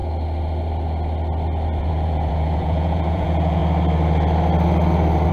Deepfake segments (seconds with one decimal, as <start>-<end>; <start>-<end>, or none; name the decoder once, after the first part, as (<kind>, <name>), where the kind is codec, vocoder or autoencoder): 1.8-3.6 (vocoder, Vocos)